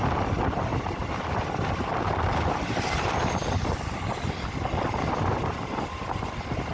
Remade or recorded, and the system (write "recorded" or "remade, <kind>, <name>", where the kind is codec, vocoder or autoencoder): remade, vocoder, BigVGAN v2